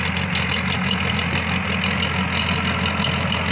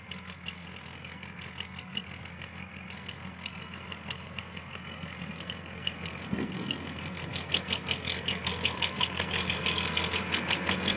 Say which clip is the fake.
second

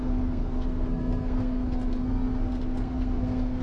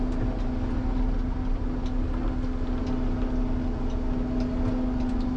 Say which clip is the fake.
first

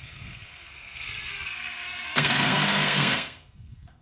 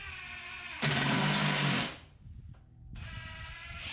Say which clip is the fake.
first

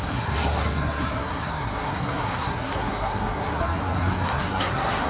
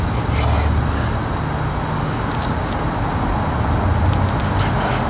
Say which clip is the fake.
first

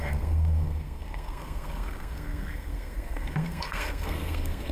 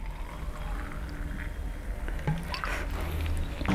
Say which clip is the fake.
first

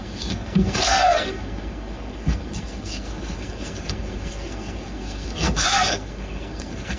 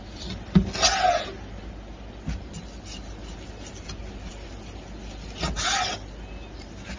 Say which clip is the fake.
first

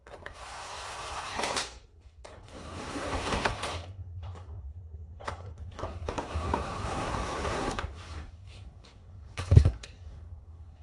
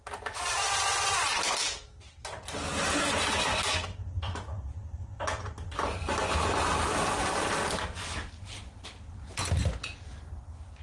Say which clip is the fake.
first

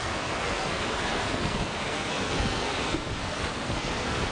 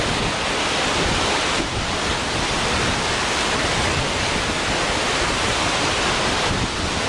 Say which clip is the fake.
first